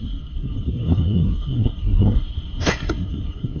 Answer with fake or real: fake